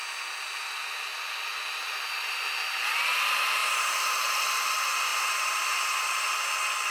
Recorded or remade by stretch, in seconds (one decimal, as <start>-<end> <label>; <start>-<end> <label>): 0.0-3.6 recorded; 3.6-4.4 remade; 4.4-5.1 recorded; 5.1-6.0 remade; 6.0-6.9 recorded

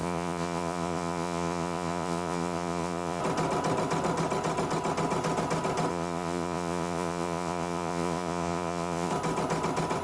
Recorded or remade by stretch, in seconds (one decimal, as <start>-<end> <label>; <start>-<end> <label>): 0.0-3.2 remade; 3.2-5.9 recorded; 5.9-9.1 remade; 9.1-10.0 recorded

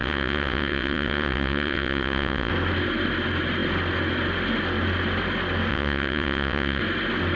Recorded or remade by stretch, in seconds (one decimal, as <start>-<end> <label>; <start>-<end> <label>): 0.0-2.5 remade; 2.5-5.7 recorded; 5.7-6.8 remade; 6.8-7.4 recorded

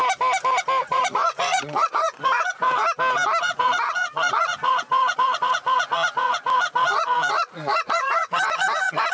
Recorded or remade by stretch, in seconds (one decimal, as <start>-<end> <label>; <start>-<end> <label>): 0.0-0.8 recorded; 0.8-2.8 remade; 2.8-3.4 recorded; 3.4-9.1 remade

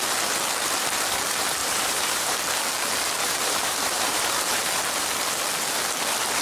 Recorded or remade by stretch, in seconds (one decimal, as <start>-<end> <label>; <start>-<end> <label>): 0.0-1.6 recorded; 1.6-2.4 remade; 2.4-3.2 recorded; 3.2-4.6 remade; 4.6-6.4 recorded

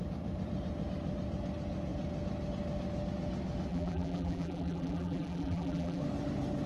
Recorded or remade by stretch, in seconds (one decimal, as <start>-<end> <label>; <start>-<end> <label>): 0.0-3.7 recorded; 3.7-6.0 remade; 6.0-6.7 recorded

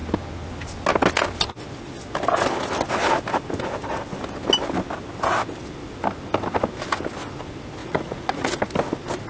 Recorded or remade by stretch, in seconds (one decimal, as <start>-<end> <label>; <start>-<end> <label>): 0.0-7.8 recorded; 7.8-8.5 remade; 8.5-9.3 recorded

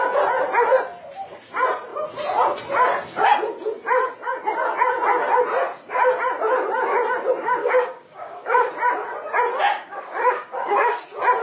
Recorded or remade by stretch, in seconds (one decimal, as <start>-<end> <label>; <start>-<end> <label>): 0.0-7.6 recorded; 7.6-8.7 remade; 8.7-9.7 recorded; 9.7-11.0 remade; 11.0-11.4 recorded